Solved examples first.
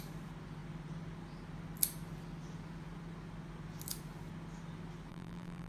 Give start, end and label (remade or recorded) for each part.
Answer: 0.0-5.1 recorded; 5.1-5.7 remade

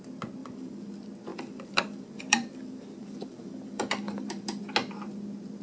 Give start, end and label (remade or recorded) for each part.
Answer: 0.0-0.4 recorded; 0.4-0.9 remade; 0.9-1.3 recorded; 1.3-4.6 remade; 4.6-5.6 recorded